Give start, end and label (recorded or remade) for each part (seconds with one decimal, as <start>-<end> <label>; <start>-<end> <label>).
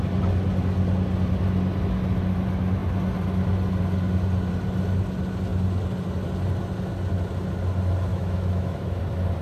0.0-8.1 recorded; 8.1-9.0 remade; 9.0-9.4 recorded